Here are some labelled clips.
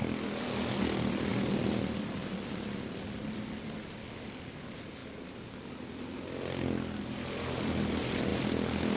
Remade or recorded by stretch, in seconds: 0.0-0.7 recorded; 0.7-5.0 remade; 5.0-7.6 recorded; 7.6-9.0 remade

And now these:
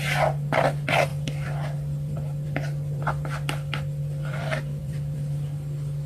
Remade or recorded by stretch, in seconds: 0.0-6.1 recorded

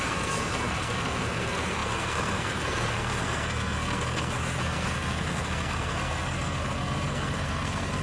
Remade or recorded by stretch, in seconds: 0.0-8.0 remade

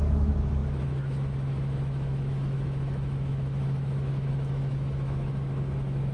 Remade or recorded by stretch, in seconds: 0.0-6.1 remade

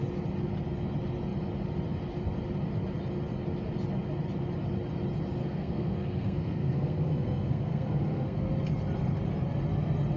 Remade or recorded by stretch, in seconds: 0.0-5.4 recorded; 5.4-8.5 remade; 8.5-10.2 recorded

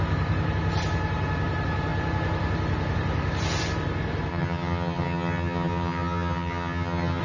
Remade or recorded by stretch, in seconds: 0.0-4.3 recorded; 4.3-7.2 remade

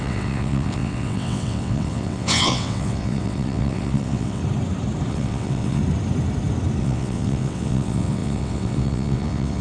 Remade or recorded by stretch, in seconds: 0.0-4.4 remade; 4.4-5.1 recorded; 5.1-5.8 remade; 5.8-6.8 recorded; 6.8-9.6 remade

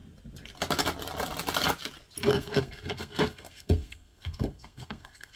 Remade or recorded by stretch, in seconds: 0.0-2.3 recorded; 2.3-5.4 remade